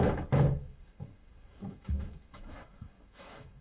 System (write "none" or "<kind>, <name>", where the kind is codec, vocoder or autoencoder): autoencoder, DAC-VAE